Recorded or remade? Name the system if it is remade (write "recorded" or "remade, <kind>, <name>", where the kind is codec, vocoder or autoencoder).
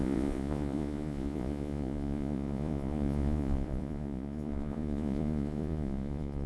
remade, vocoder, Vocos